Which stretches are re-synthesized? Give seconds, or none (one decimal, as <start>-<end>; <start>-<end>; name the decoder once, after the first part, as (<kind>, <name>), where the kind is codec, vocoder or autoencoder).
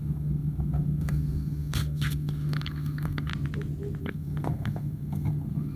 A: 0.0-3.3 (codec, SNAC); 4.0-5.8